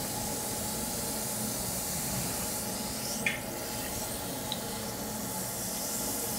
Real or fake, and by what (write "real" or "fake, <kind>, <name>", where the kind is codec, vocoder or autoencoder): real